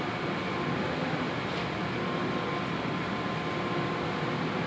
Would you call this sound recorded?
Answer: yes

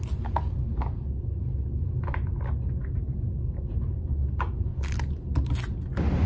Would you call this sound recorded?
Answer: yes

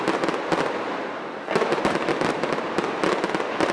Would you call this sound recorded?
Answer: yes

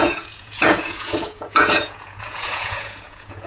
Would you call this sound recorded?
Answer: no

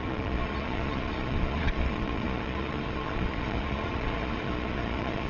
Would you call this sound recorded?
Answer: no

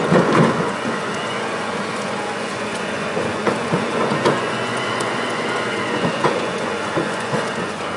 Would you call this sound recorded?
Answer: no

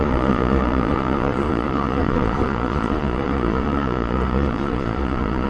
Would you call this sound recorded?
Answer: no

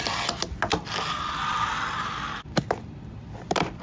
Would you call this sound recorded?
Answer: yes